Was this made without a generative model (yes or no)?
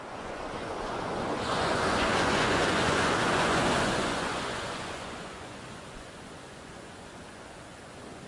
no